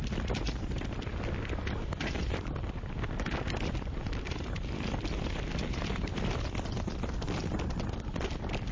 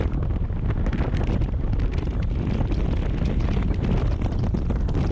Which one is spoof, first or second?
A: first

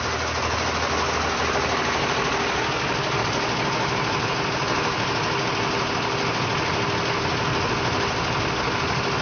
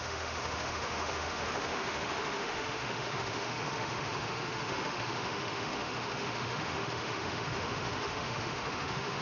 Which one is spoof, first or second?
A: second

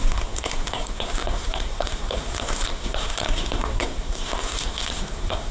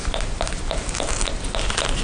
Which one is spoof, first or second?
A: first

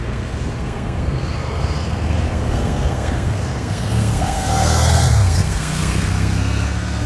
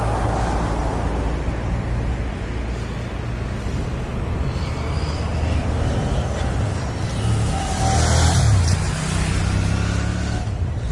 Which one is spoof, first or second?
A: first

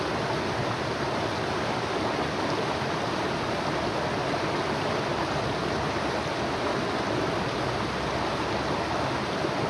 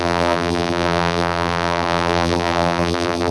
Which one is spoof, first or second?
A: second